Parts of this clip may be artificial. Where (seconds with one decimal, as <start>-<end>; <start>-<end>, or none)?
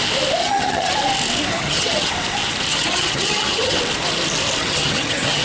0.4-0.9; 1.5-2.1; 2.7-3.8; 4.6-5.4